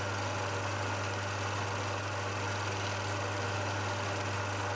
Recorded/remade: recorded